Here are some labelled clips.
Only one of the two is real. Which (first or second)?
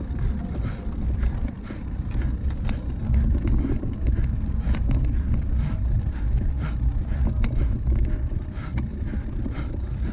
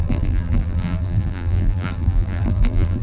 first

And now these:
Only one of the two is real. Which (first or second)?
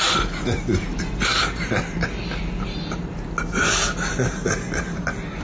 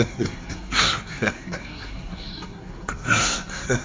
first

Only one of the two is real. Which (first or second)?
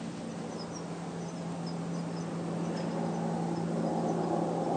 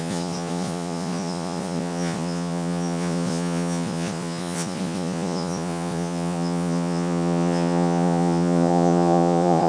first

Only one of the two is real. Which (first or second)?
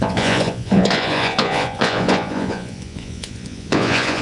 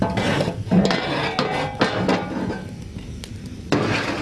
second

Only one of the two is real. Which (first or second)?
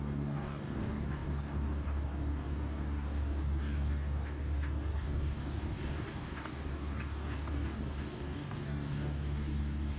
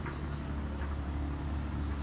second